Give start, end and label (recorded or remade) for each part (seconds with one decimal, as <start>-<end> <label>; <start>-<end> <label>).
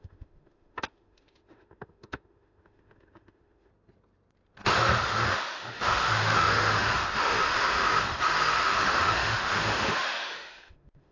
0.0-3.7 remade; 3.7-5.0 recorded; 5.0-7.9 remade; 7.9-8.6 recorded; 8.6-11.1 remade